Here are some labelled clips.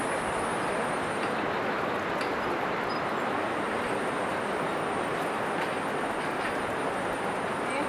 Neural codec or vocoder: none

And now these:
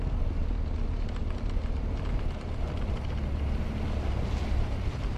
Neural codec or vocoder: vocoder, BigVGAN v2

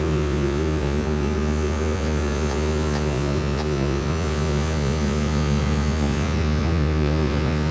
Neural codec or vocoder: vocoder, Vocos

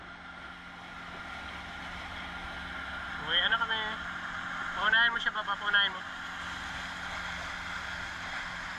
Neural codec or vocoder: none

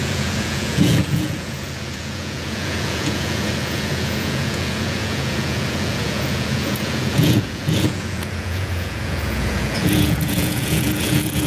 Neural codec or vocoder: vocoder, Vocos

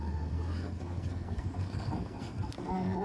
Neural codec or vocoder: codec, SNAC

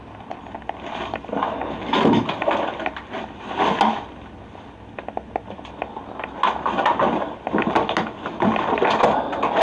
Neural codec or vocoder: none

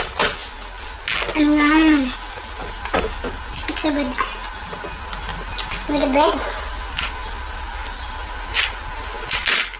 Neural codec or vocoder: none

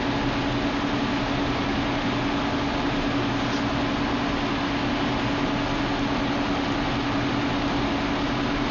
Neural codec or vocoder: none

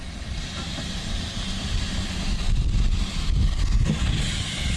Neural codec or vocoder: none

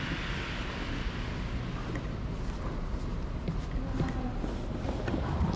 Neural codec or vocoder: none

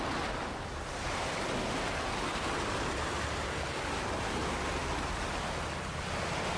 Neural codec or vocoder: none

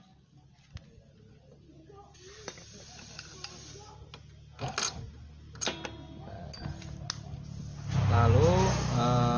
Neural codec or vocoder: none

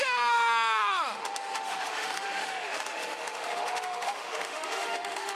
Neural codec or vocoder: autoencoder, DAC-VAE